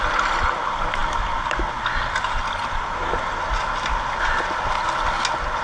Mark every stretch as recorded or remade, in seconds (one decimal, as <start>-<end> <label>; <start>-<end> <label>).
0.0-5.6 recorded